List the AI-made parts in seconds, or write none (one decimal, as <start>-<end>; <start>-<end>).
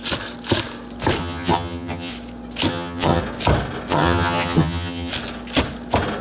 1.2-2.1; 2.7-3.2; 3.9-5.1